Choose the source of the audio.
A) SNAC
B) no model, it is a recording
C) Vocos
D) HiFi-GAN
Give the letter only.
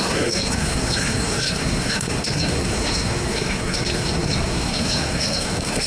A